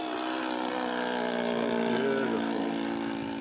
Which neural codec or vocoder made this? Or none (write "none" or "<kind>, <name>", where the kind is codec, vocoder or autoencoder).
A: none